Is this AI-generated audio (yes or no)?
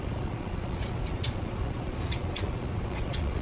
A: yes